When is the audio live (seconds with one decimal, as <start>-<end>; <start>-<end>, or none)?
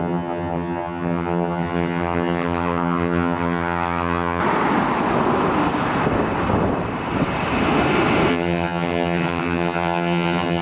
4.4-8.3